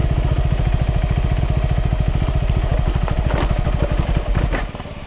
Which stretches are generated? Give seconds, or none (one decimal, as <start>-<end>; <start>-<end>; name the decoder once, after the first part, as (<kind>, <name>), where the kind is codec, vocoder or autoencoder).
none